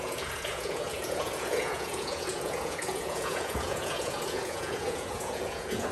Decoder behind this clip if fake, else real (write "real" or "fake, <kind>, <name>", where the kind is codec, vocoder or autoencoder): fake, vocoder, Vocos